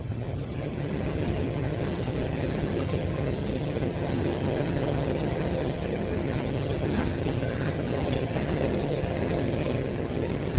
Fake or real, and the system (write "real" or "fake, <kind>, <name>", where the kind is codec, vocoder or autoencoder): fake, vocoder, HiFi-GAN